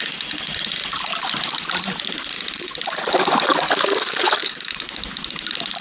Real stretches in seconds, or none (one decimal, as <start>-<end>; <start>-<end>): 0.0-3.5; 4.7-5.8